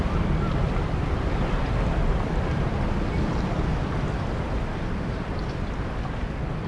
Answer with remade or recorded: recorded